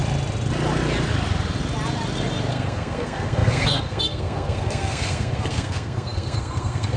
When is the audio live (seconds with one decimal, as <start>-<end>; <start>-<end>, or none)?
0.0-2.5